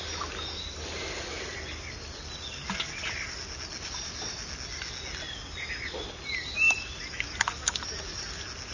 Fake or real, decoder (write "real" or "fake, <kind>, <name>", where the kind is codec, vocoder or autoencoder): real